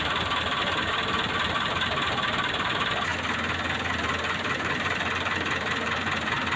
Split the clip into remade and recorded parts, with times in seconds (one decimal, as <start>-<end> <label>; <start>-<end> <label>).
0.0-3.1 remade; 3.1-3.9 recorded; 3.9-6.6 remade